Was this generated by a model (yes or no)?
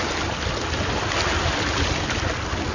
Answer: no